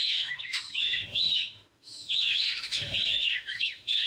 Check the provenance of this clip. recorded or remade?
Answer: remade